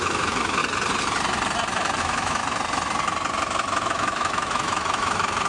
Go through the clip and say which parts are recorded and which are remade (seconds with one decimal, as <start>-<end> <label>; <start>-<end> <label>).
0.0-0.6 remade; 0.6-2.0 recorded; 2.0-2.4 remade; 2.4-3.8 recorded; 3.8-5.5 remade